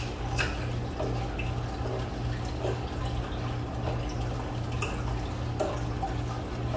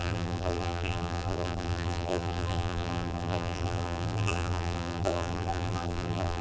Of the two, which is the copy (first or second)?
second